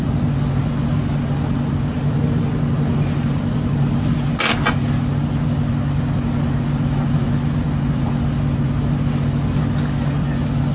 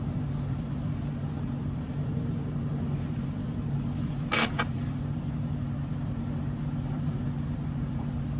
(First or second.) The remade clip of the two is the second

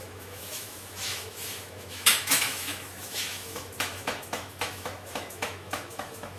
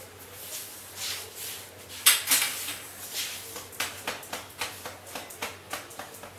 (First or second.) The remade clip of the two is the first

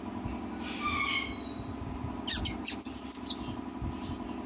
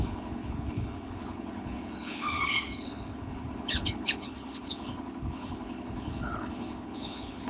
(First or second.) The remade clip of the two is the second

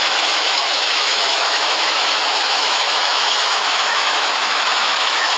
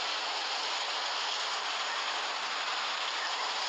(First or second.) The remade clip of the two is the first